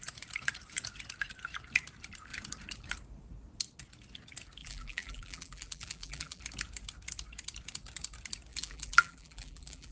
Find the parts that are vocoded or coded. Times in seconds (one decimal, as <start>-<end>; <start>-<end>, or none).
4.6-6.4; 8.5-9.9